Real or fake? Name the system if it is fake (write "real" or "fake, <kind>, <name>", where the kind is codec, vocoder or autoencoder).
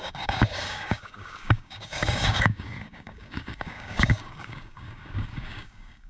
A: fake, codec, DAC